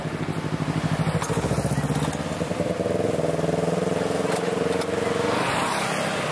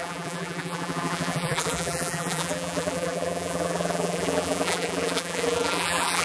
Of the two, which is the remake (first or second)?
second